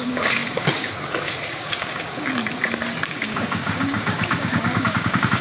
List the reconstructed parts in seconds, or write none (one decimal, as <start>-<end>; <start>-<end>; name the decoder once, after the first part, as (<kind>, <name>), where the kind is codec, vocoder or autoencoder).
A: 0.0-2.4 (codec, DAC); 3.1-5.4